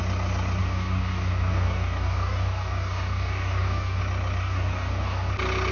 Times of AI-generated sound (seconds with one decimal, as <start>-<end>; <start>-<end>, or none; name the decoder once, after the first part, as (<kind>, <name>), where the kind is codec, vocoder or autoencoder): 0.6-4.0 (codec, DAC); 4.4-5.3